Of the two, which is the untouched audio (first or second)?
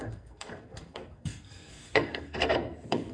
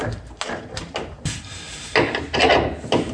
second